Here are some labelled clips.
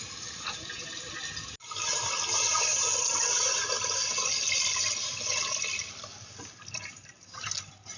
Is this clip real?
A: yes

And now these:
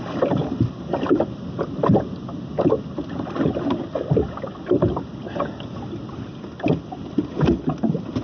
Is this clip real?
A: yes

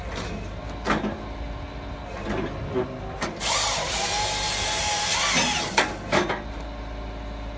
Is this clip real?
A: yes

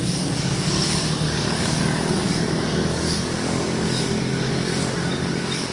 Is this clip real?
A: no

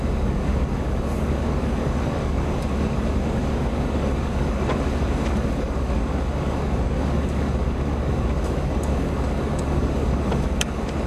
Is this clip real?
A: no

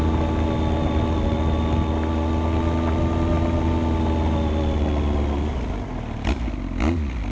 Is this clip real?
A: yes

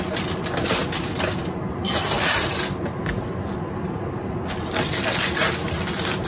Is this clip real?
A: yes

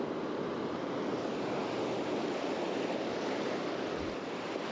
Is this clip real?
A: yes